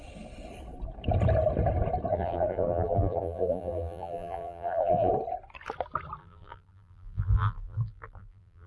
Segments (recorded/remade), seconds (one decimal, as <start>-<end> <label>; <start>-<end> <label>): 0.0-2.1 recorded; 2.1-5.1 remade; 5.1-6.2 recorded; 6.2-8.7 remade